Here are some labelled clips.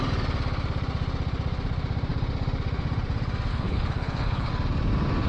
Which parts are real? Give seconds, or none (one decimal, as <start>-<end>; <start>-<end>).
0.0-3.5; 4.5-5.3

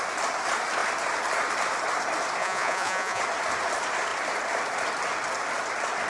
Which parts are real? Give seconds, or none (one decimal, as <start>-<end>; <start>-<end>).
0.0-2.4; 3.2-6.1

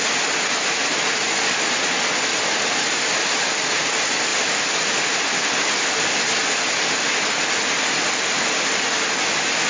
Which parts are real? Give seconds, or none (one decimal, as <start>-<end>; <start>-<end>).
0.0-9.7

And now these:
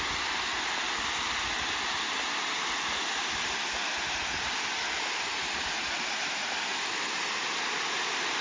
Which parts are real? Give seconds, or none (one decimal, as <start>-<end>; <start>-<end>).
0.0-8.4